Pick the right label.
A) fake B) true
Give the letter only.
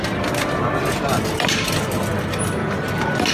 B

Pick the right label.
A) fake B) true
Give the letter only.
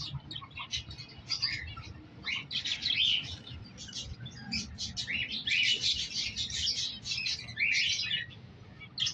B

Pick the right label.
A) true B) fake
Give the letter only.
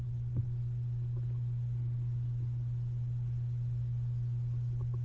A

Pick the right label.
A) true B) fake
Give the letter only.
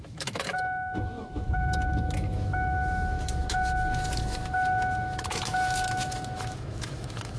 B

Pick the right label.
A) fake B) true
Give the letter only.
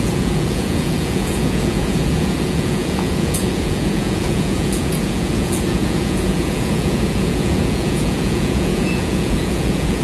A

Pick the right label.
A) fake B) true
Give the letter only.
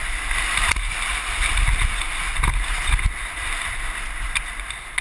B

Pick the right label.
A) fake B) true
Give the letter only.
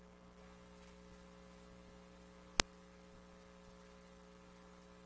B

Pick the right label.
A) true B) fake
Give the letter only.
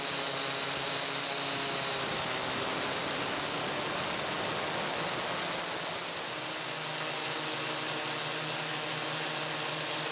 A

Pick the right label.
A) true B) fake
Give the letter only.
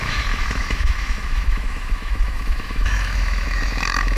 B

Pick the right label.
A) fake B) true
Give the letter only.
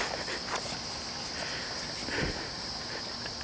B